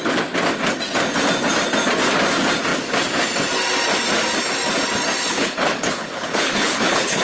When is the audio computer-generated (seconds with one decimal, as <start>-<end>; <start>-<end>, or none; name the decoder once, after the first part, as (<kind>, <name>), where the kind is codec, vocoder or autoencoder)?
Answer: 5.3-7.2 (codec, HILCodec)